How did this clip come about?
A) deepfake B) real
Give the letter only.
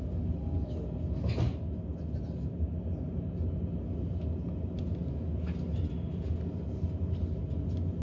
B